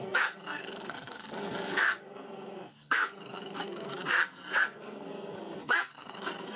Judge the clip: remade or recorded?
remade